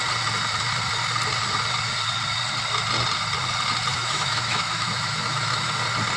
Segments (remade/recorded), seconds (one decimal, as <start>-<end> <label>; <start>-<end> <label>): 0.0-3.9 recorded; 3.9-5.7 remade; 5.7-6.2 recorded